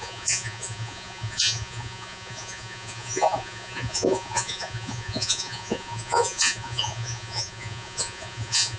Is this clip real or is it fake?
fake